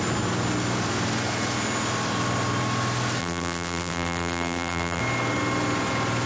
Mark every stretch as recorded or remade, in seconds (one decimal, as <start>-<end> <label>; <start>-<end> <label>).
0.0-3.2 recorded; 3.2-5.0 remade; 5.0-6.3 recorded